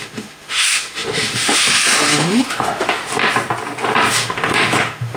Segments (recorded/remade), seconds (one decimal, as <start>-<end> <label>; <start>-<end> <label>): 0.0-3.0 remade; 3.0-4.1 recorded; 4.1-5.2 remade